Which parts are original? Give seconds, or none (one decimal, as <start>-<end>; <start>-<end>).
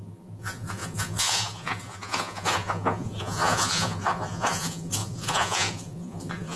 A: none